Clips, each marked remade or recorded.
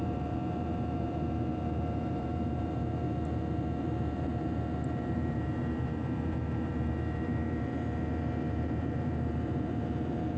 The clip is remade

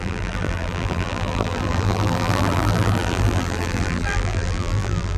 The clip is remade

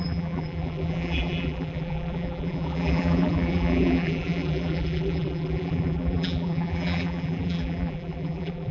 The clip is remade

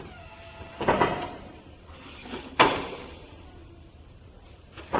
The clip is remade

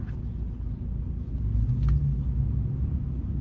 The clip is recorded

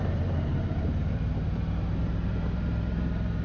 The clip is remade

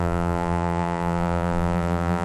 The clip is remade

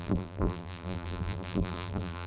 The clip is remade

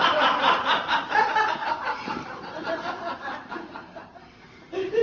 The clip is remade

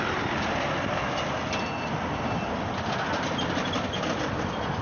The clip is recorded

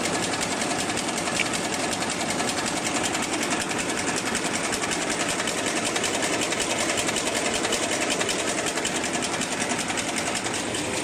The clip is remade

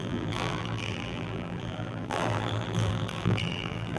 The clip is remade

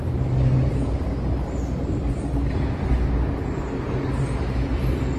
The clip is recorded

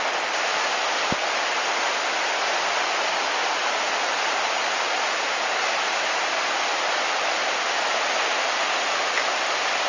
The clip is recorded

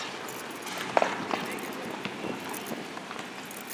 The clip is recorded